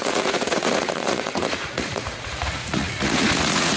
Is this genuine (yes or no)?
no